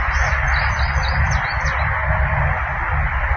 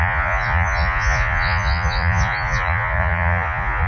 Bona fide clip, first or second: first